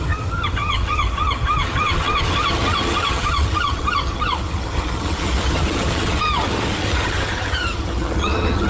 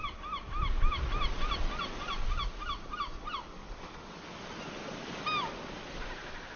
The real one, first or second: second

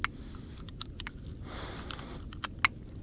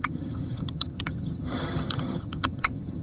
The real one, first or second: first